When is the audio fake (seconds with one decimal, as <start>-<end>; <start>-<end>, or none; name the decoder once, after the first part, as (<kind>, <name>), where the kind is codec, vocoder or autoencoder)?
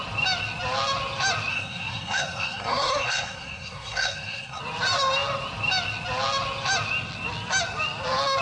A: 1.5-4.6 (codec, SNAC)